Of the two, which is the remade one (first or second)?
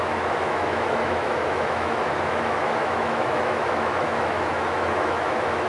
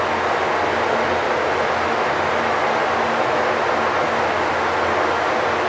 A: first